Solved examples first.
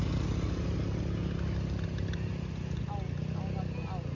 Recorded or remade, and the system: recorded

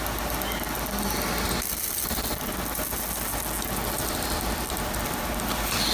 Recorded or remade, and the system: recorded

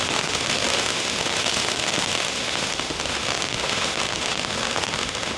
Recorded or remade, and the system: remade, autoencoder, DAC-VAE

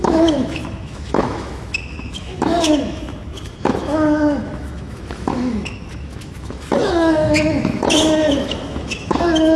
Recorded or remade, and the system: remade, autoencoder, DAC-VAE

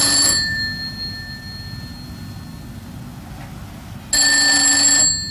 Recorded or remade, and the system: recorded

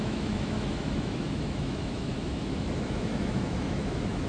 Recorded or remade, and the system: remade, autoencoder, DAC-VAE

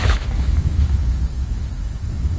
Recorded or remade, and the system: remade, autoencoder, DAC-VAE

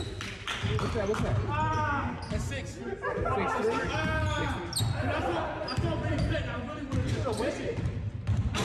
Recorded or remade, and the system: recorded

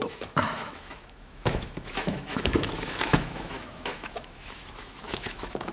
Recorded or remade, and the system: remade, autoencoder, DAC-VAE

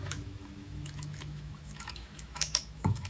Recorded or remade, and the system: remade, autoencoder, DAC-VAE